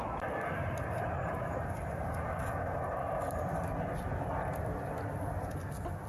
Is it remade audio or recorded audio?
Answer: recorded